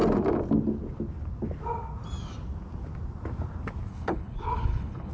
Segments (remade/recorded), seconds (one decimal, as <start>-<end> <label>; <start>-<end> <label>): 0.0-3.9 recorded; 3.9-5.1 remade

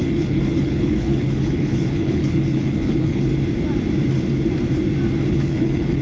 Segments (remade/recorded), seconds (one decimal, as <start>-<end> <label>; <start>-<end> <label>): 0.0-3.3 remade; 3.3-5.3 recorded; 5.3-6.0 remade

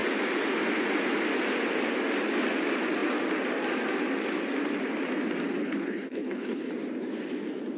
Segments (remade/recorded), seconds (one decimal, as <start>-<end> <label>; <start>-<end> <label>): 0.0-5.6 recorded; 5.6-6.7 remade; 6.7-7.8 recorded

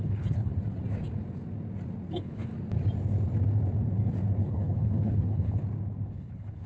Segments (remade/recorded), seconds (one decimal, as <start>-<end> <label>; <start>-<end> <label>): 0.0-0.5 remade; 0.5-2.1 recorded; 2.1-2.5 remade; 2.5-4.4 recorded; 4.4-5.6 remade; 5.6-6.1 recorded; 6.1-6.7 remade

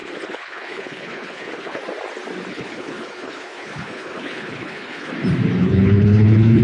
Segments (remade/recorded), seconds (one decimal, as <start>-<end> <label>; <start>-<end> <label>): 0.0-1.8 remade; 1.8-2.5 recorded; 2.5-5.1 remade; 5.1-5.6 recorded; 5.6-6.6 remade